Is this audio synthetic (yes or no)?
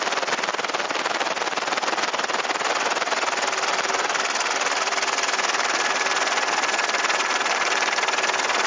no